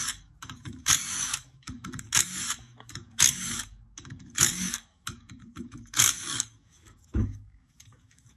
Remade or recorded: remade